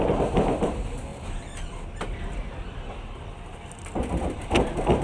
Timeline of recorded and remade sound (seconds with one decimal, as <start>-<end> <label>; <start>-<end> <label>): 0.0-1.1 remade; 1.1-4.1 recorded; 4.1-5.0 remade